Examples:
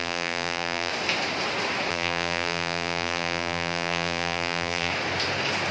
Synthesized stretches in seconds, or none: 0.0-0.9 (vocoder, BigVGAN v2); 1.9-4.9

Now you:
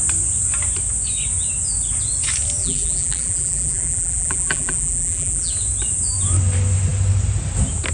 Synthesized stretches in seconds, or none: 2.6-5.5 (vocoder, BigVGAN v2)

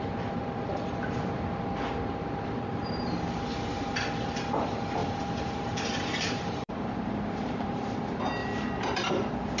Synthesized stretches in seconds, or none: 5.0-7.9 (vocoder, BigVGAN v2); 8.4-9.0

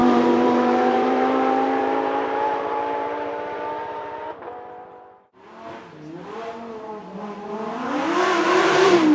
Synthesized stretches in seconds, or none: 0.0-4.2 (vocoder, BigVGAN v2); 8.4-9.1

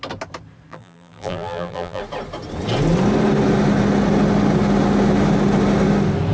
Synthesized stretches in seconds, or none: 0.7-2.0 (vocoder, BigVGAN v2)

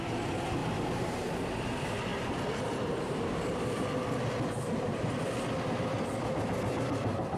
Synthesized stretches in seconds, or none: 0.6-1.3 (vocoder, BigVGAN v2); 2.1-4.2

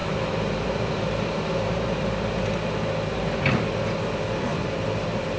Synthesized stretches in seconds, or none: 0.0-3.2 (vocoder, BigVGAN v2); 4.5-5.4